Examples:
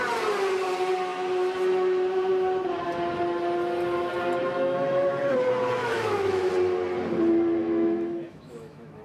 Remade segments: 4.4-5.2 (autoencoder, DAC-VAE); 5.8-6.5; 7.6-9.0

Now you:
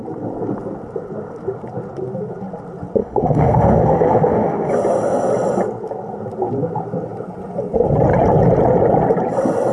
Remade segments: 3.0-4.7 (autoencoder, DAC-VAE)